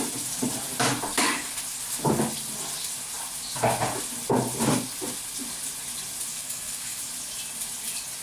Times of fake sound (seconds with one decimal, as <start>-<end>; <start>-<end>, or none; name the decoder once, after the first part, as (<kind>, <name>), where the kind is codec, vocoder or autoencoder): 1.1-1.6 (codec, DAC); 6.3-7.0